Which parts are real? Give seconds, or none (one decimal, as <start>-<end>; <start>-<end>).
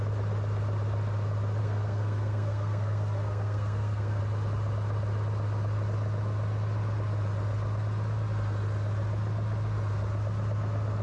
0.0-1.6; 4.2-11.0